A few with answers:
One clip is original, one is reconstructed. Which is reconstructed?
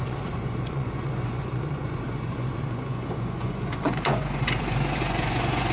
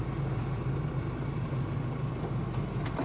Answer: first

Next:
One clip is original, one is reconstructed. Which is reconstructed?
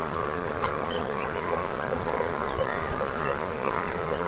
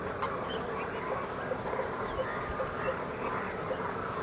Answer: first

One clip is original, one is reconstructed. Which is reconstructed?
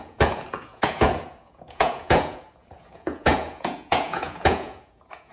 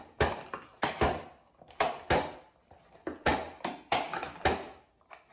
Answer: first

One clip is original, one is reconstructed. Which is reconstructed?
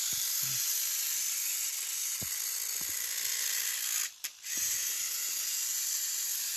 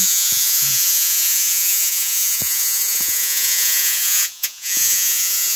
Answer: second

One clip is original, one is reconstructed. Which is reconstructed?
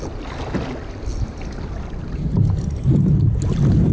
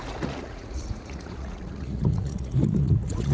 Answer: second